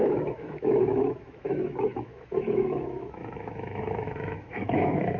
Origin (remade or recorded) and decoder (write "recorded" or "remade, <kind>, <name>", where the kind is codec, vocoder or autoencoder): remade, autoencoder, DAC-VAE